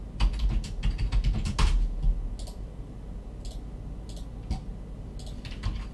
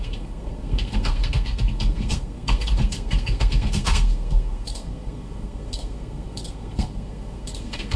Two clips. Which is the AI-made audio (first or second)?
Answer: second